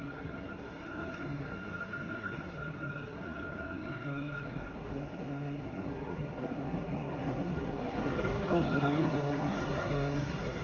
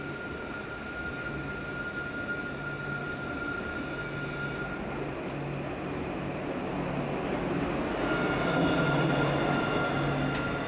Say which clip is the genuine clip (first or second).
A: second